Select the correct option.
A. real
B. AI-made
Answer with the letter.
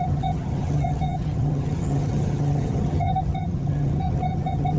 B